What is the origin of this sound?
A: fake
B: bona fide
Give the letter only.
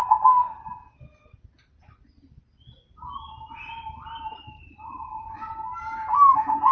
B